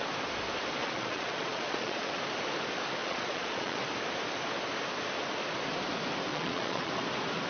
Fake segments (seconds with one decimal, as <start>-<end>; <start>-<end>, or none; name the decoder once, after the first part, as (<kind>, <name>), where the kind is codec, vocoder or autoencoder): 0.8-2.2 (vocoder, Vocos); 3.0-3.8; 6.3-6.9

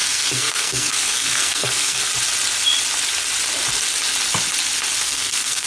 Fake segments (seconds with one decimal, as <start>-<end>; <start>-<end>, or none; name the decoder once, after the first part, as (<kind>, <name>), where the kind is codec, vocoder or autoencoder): 0.0-2.1 (codec, SNAC); 5.0-5.7